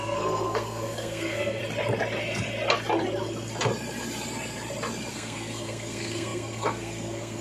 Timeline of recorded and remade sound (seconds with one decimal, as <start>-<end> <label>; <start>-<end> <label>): 0.0-1.6 remade; 1.6-5.1 recorded; 5.1-7.4 remade